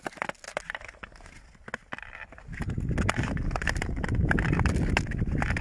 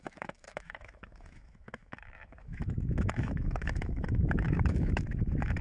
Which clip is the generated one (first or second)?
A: second